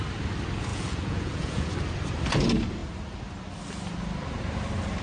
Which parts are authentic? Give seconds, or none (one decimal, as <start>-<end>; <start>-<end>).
0.0-0.7; 1.7-5.0